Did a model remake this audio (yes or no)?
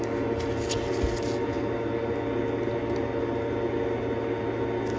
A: no